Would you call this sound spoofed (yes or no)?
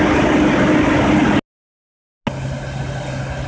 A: no